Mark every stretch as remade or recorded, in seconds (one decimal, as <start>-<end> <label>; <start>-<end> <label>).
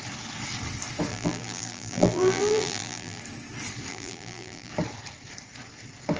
0.0-1.1 recorded; 1.1-3.2 remade; 3.2-3.9 recorded; 3.9-4.7 remade; 4.7-6.2 recorded